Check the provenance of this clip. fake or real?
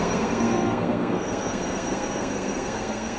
fake